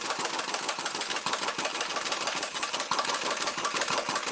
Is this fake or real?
real